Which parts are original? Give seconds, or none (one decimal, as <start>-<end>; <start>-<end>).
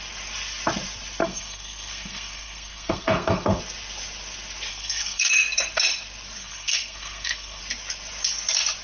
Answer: 0.0-1.2; 3.6-4.7; 5.3-6.4; 7.6-8.8